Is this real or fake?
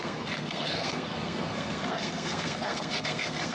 fake